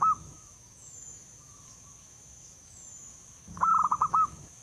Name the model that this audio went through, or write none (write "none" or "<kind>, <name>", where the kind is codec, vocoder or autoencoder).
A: autoencoder, DAC-VAE